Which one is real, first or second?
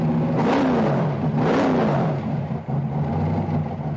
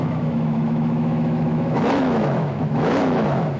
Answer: first